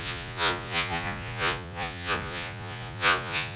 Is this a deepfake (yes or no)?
yes